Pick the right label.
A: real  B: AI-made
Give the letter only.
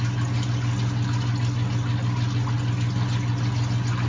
A